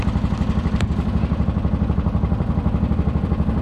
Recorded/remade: remade